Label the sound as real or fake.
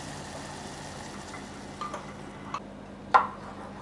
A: real